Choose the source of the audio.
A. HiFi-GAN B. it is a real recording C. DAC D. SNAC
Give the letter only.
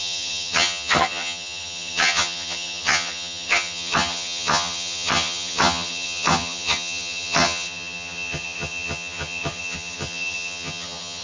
A